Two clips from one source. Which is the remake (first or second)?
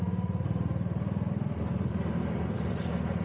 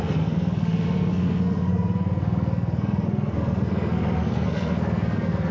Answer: second